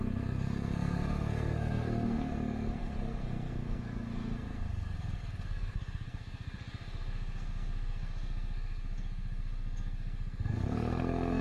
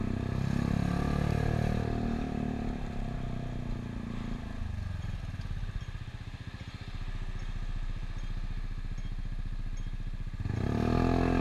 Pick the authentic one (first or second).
second